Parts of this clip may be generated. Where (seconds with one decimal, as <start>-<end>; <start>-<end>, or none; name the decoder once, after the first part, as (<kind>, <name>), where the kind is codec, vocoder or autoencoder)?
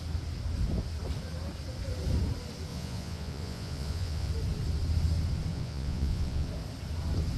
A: 2.7-4.3 (vocoder, Vocos); 5.5-6.5